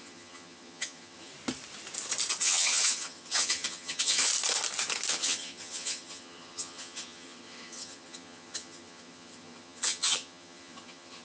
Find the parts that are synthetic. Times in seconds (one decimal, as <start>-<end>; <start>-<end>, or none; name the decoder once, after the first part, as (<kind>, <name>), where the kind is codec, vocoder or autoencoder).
0.0-1.3 (vocoder, HiFi-GAN); 2.4-4.3; 5.1-11.2

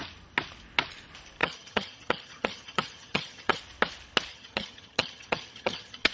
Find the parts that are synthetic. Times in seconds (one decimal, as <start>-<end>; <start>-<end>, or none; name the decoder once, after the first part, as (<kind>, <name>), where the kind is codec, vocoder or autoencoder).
1.4-3.6 (vocoder, HiFi-GAN); 4.3-6.1

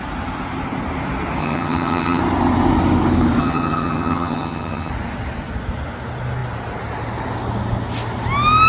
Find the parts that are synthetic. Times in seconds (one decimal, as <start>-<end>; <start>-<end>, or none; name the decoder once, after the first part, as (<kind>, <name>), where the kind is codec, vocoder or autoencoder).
1.4-2.2 (vocoder, HiFi-GAN); 3.4-4.9